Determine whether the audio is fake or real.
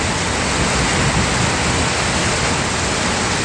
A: real